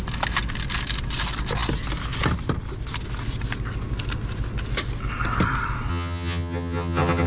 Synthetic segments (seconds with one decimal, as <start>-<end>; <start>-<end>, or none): 5.9-7.3